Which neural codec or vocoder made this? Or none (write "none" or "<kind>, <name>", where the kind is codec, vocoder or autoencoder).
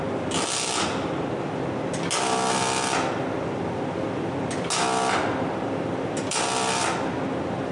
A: none